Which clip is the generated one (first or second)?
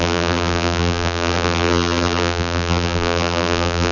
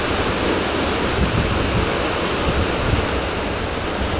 first